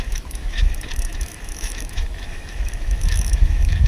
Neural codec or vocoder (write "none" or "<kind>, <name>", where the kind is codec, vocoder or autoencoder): autoencoder, DAC-VAE